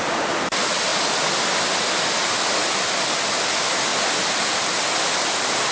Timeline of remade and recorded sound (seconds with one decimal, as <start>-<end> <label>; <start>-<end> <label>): 0.0-5.7 recorded